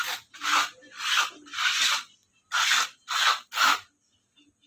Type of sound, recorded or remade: recorded